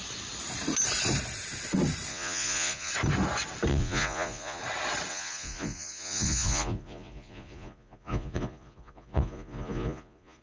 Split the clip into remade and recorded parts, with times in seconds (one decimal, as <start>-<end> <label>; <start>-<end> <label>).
0.0-2.1 recorded; 2.1-2.9 remade; 2.9-3.7 recorded; 3.7-4.6 remade; 4.6-5.1 recorded; 5.1-10.4 remade